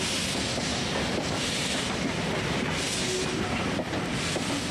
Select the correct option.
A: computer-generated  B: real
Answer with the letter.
B